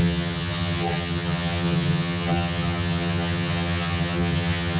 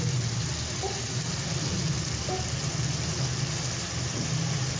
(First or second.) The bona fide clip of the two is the second